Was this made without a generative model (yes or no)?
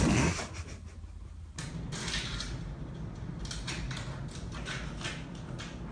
yes